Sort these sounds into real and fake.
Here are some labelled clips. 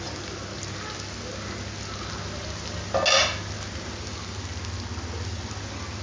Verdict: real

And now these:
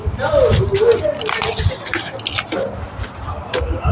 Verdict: real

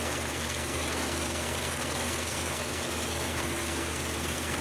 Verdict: fake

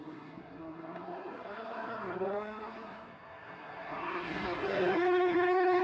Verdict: fake